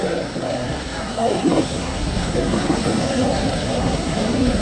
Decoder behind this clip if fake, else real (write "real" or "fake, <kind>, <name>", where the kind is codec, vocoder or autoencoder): fake, codec, SNAC